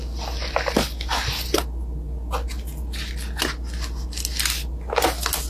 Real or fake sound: real